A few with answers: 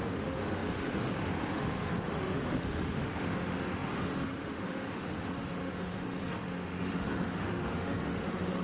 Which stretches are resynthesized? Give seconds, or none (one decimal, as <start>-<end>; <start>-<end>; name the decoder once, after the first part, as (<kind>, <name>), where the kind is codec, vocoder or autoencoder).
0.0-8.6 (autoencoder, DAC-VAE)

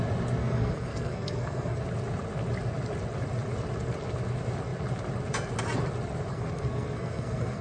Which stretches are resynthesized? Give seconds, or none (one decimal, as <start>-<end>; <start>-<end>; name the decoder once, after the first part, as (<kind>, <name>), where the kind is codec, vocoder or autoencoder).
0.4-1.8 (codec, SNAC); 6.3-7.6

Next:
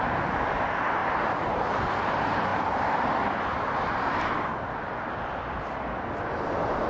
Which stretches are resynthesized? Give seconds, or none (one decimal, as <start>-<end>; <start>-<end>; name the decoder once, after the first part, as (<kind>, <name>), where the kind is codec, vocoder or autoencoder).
1.0-1.9 (vocoder, BigVGAN v2)